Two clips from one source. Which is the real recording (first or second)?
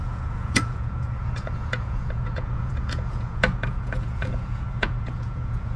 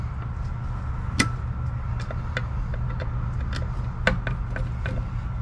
second